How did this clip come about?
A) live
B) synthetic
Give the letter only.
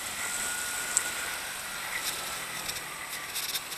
A